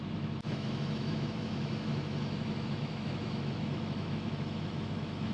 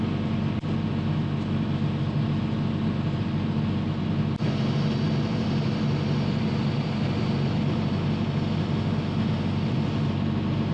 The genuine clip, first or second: second